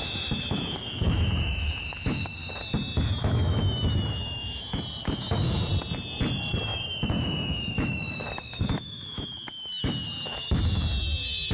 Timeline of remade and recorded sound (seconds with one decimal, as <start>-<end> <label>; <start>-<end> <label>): 0.0-5.7 remade; 5.7-6.6 recorded; 6.6-11.5 remade